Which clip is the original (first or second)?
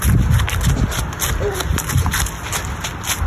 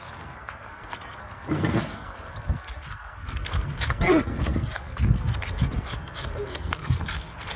first